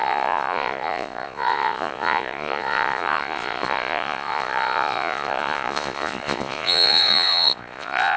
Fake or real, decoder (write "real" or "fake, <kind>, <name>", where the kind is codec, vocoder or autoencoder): fake, vocoder, Vocos